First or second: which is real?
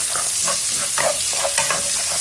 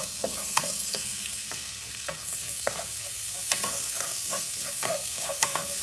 first